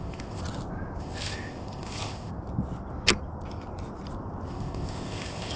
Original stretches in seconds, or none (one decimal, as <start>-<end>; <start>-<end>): 0.4-1.0; 2.3-4.5